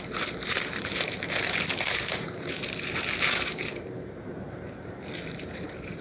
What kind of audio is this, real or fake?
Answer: fake